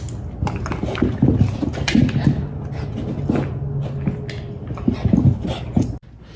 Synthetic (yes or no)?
no